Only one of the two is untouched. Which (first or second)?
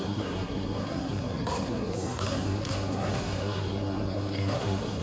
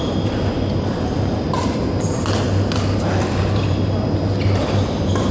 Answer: second